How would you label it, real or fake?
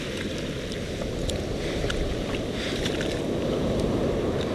real